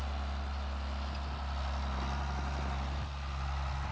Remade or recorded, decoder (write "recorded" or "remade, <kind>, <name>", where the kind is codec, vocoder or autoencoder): recorded